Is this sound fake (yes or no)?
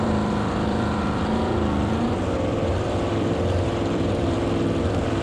yes